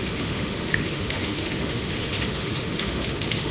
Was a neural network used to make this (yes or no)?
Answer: yes